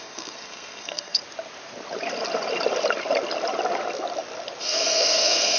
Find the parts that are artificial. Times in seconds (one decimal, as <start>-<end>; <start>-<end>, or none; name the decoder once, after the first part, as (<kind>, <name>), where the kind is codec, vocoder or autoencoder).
0.0-1.2 (codec, SNAC); 4.6-5.6